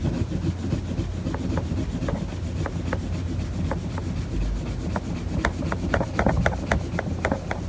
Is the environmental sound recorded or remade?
recorded